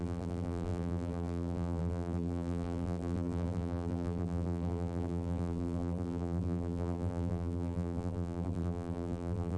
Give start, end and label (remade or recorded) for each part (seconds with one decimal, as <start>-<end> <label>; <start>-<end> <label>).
0.0-9.6 remade